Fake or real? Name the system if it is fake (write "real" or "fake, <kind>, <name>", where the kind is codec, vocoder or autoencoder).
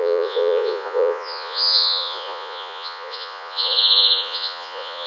fake, vocoder, Vocos